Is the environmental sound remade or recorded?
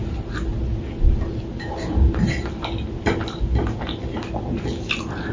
recorded